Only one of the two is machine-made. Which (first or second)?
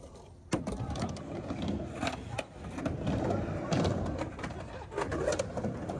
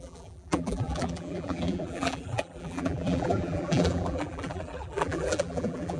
second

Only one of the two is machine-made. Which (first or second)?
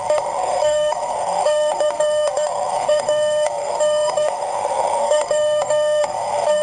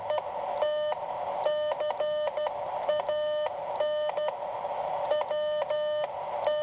first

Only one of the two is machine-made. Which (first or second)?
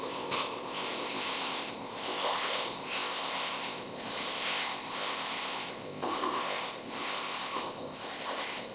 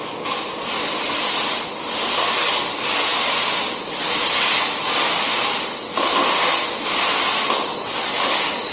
first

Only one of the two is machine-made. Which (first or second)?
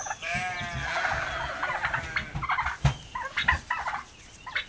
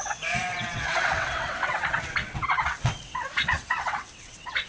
second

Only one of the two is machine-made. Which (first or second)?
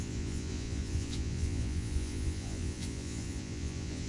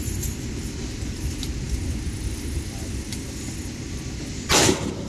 first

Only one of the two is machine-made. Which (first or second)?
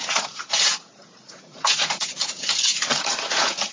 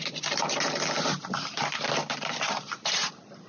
first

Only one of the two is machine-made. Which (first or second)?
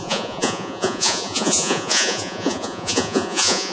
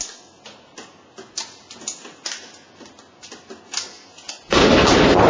first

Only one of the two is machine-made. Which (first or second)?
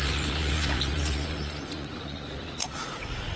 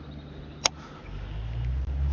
first